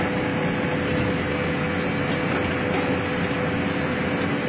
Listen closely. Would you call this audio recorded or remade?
recorded